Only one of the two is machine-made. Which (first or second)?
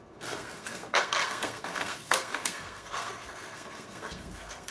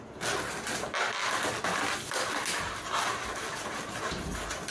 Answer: first